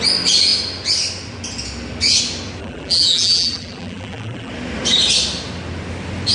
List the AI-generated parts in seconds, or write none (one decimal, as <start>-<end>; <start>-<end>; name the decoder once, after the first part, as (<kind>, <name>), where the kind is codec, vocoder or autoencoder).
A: 2.6-4.5 (vocoder, BigVGAN v2)